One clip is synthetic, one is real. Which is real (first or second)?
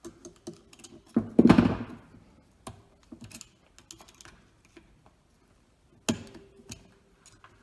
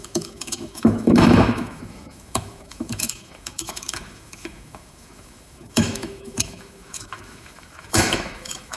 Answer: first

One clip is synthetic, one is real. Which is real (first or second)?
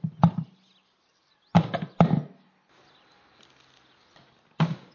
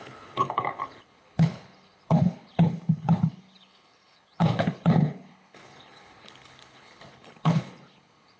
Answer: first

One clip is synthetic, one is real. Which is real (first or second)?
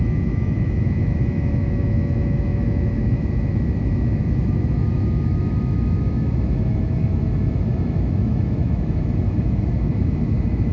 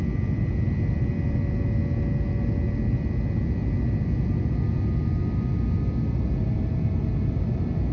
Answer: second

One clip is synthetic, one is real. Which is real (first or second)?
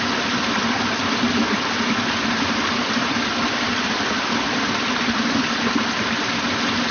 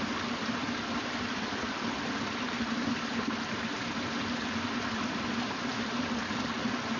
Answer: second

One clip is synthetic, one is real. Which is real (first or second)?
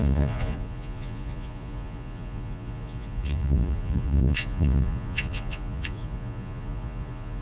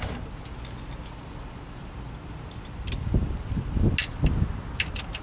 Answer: second